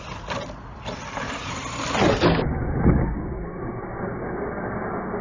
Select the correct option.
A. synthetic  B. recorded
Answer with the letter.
B